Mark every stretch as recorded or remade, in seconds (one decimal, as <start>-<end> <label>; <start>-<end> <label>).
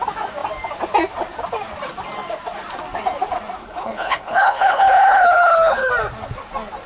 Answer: 0.0-3.6 recorded; 3.6-5.9 remade; 5.9-6.9 recorded